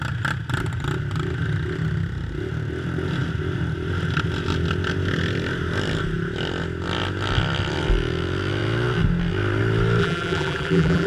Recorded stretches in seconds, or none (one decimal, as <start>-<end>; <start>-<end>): 0.0-10.0